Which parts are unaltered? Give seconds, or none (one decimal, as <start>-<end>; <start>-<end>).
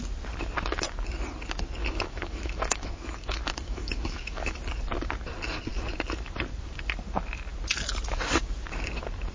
0.0-1.8; 4.6-9.3